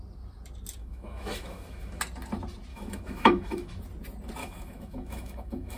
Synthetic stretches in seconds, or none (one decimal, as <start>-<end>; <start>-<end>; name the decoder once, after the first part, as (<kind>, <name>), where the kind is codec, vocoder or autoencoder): 0.8-2.0 (autoencoder, DAC-VAE); 2.7-3.8; 4.4-5.8